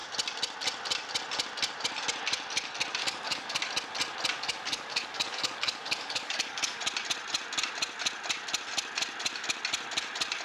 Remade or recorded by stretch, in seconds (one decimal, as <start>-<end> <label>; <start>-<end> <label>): 0.0-3.0 recorded; 3.0-3.6 remade; 3.6-4.3 recorded; 4.3-6.8 remade; 6.8-10.4 recorded